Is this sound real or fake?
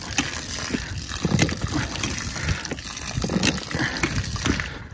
real